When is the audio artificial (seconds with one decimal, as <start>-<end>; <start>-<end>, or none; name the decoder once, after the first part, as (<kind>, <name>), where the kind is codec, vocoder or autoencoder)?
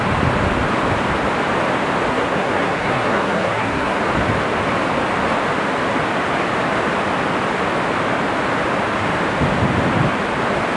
2.1-4.0 (codec, SNAC)